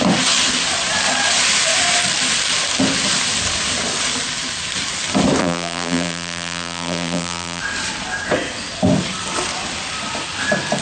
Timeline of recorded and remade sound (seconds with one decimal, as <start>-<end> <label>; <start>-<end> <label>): 0.0-5.4 recorded; 5.4-7.6 remade; 7.6-10.8 recorded